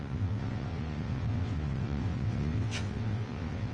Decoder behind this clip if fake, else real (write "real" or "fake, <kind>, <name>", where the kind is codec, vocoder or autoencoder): fake, vocoder, WaveNeXt